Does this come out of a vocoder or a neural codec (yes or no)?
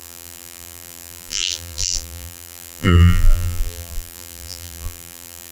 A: yes